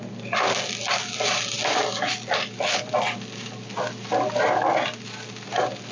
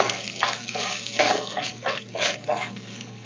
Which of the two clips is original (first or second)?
first